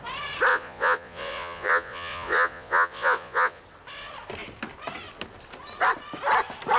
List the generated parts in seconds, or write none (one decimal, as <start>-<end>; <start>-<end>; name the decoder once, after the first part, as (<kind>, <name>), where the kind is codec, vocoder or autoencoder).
0.5-3.6 (vocoder, Vocos)